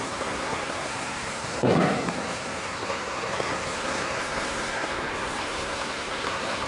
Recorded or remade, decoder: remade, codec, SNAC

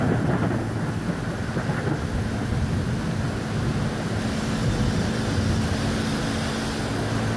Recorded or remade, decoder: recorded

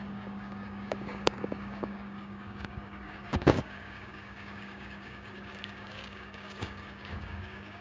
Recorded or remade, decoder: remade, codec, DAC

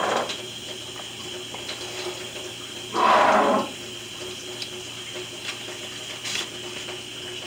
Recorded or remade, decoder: recorded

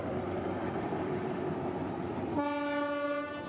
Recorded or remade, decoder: recorded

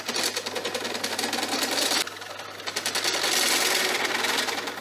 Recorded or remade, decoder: recorded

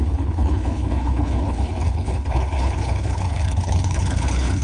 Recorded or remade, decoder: remade, codec, HILCodec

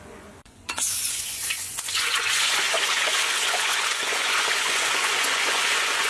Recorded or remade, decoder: remade, vocoder, Vocos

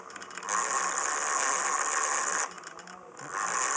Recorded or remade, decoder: recorded